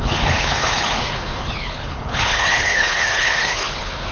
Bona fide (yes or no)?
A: no